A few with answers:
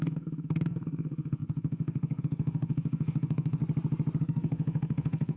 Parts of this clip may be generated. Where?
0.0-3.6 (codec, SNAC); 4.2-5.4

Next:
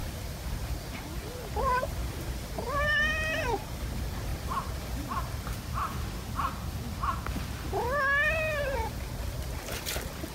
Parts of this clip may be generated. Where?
4.3-7.4 (vocoder, BigVGAN v2)

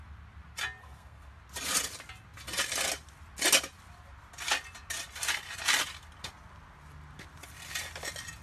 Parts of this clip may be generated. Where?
0.8-1.3 (codec, SNAC)

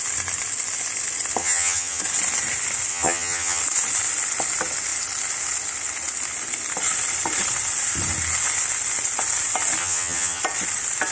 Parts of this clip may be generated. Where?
1.4-2.0 (vocoder, HiFi-GAN); 2.9-3.6; 9.8-10.4

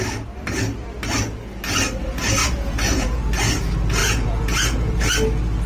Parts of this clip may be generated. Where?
2.4-3.2 (vocoder, Vocos); 4.0-5.0

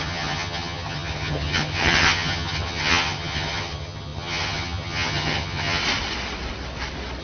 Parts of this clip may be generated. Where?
0.0-5.8 (vocoder, HiFi-GAN)

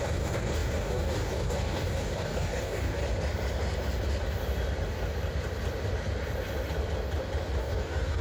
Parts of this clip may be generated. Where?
0.0-3.0 (codec, DAC); 7.6-8.2

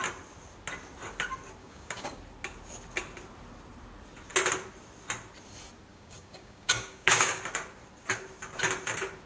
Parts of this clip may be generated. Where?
1.6-2.2 (codec, DAC); 5.9-7.4